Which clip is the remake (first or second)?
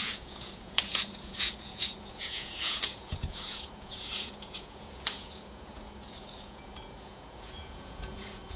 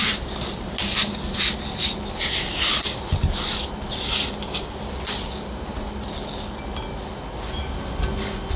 first